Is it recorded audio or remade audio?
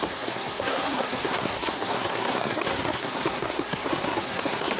remade